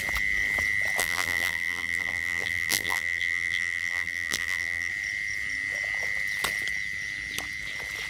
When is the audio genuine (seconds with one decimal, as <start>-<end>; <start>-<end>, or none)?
0.0-1.0; 4.9-8.1